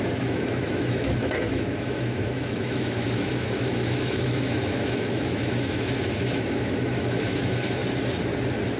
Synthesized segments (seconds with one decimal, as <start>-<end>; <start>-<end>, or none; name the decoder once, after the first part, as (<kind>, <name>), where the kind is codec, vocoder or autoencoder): 0.0-7.8 (autoencoder, DAC-VAE)